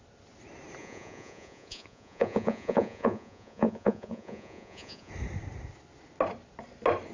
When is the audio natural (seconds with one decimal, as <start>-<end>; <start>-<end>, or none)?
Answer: 0.0-0.8; 5.1-7.1